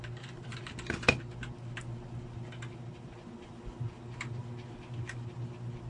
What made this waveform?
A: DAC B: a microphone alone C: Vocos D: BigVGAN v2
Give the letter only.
B